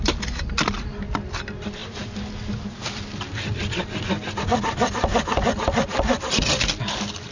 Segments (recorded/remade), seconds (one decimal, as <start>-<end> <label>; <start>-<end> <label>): 0.0-7.3 recorded